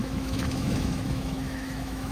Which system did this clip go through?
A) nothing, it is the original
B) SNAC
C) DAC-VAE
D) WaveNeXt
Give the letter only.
C